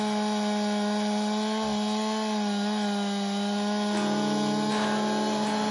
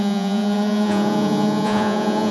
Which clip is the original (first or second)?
first